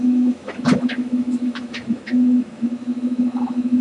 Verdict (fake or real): fake